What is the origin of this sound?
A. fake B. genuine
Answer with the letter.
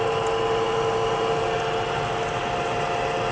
B